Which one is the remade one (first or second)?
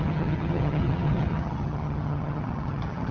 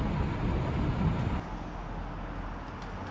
first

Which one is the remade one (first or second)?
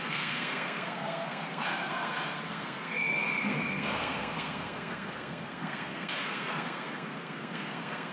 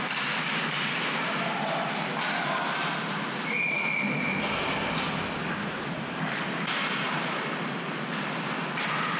first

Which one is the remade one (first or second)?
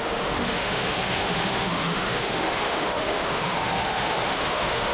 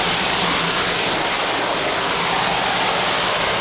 first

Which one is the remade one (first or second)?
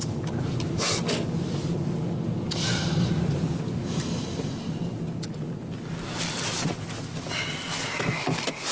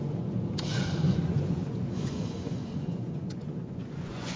second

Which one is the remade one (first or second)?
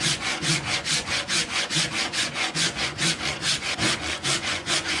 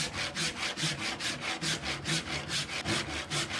first